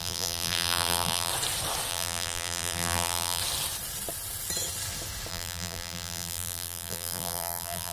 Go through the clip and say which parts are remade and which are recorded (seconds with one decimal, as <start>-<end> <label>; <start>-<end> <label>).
0.0-1.3 remade; 1.3-1.9 recorded; 1.9-3.4 remade; 3.4-5.3 recorded; 5.3-7.9 remade